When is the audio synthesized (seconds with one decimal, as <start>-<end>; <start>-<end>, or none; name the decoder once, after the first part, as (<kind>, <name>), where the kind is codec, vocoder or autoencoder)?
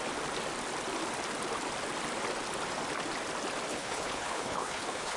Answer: 3.7-5.2 (codec, HILCodec)